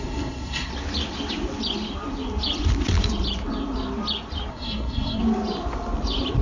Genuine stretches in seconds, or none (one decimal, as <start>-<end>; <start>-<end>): 0.7-4.5; 5.2-6.4